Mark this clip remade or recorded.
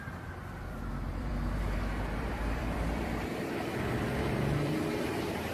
remade